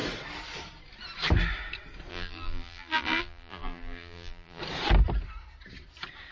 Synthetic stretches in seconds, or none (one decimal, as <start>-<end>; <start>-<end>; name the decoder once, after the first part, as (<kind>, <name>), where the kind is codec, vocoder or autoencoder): 2.1-4.6 (vocoder, BigVGAN v2)